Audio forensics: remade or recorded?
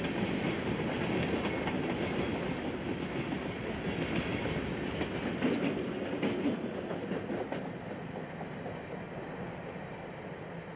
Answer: recorded